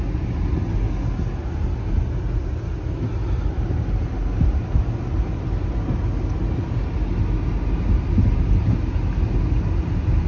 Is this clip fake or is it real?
real